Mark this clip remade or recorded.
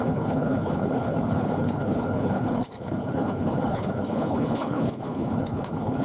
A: remade